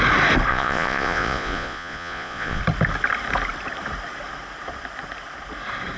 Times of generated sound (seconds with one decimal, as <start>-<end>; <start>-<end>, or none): 0.5-2.6